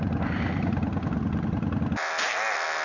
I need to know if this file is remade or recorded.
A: recorded